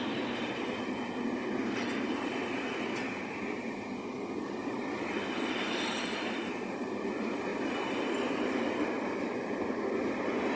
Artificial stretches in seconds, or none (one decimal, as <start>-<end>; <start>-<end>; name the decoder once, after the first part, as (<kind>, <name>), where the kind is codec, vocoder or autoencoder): none